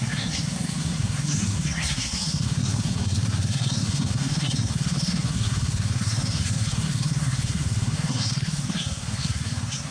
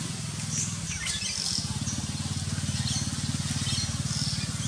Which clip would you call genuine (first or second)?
second